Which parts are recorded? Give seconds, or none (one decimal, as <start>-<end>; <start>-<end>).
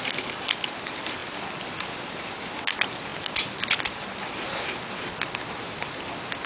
0.0-6.5